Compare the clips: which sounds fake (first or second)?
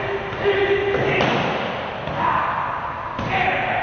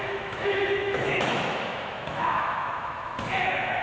second